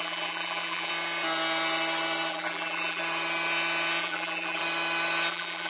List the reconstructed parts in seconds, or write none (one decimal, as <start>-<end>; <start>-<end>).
0.0-0.9; 2.3-3.0; 4.0-4.6; 5.3-5.7

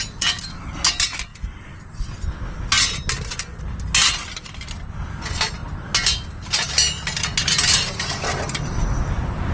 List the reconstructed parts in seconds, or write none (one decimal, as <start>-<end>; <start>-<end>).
none

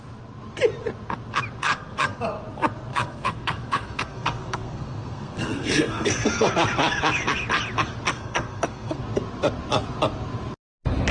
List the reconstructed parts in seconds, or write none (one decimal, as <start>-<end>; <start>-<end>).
1.6-2.2; 2.9-6.5; 8.1-9.0

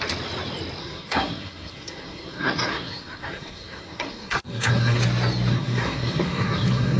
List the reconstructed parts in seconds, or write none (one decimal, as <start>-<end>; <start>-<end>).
0.8-5.0; 5.5-7.0

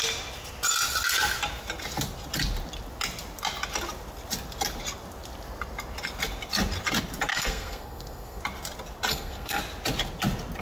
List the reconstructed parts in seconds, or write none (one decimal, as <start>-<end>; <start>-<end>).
7.3-8.4; 9.1-9.6

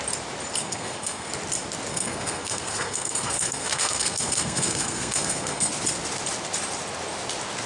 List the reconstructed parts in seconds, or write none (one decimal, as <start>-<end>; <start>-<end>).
0.6-1.3; 1.9-5.7